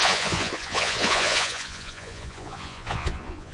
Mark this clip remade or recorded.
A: remade